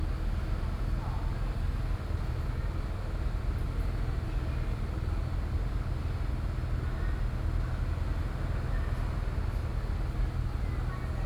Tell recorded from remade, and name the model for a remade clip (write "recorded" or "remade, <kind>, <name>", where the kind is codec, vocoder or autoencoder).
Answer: recorded